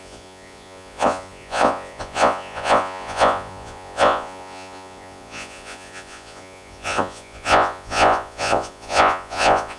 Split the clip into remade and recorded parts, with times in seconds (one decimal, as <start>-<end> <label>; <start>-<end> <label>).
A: 0.0-9.8 remade